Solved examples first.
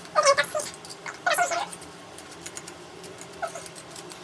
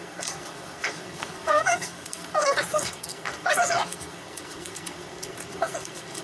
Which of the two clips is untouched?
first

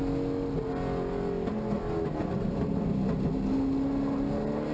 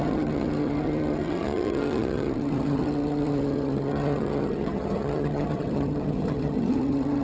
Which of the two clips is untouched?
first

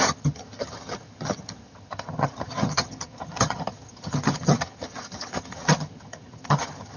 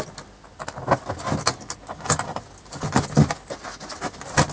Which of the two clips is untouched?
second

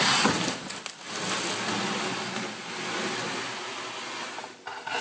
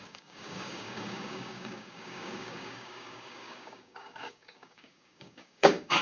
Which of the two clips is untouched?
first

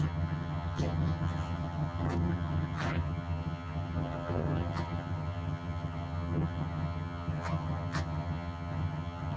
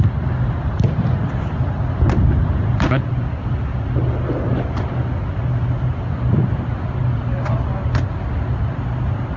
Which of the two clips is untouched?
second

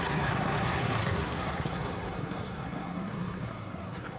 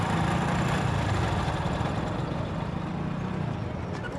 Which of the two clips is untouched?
second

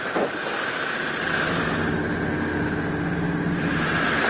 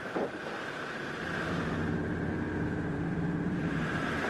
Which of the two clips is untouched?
first